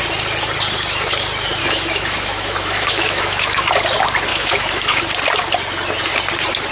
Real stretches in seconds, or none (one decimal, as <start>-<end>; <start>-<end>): 0.0-1.6; 3.7-4.3; 5.0-6.7